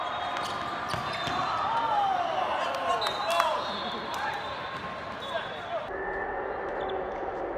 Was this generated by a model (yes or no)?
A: no